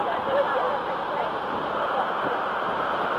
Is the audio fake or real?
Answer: real